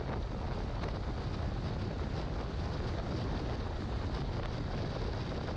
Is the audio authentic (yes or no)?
yes